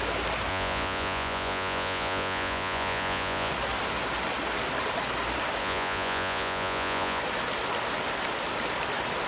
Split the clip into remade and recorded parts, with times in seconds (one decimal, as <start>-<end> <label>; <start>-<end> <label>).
0.0-0.5 recorded; 0.5-3.5 remade; 3.5-5.6 recorded; 5.6-7.2 remade; 7.2-9.3 recorded